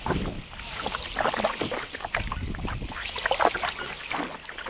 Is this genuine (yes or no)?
yes